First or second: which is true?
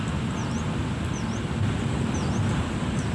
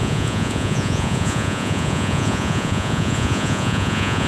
first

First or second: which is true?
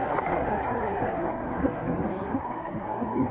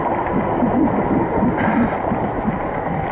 second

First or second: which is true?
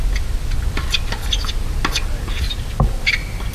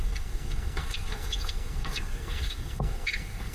first